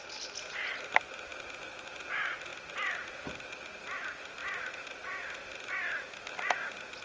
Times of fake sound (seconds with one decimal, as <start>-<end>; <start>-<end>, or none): none